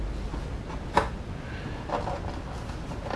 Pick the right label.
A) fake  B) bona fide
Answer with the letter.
B